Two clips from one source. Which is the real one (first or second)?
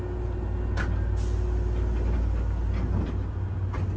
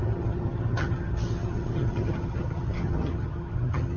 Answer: first